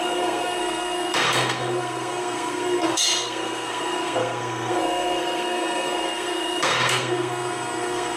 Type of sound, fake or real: fake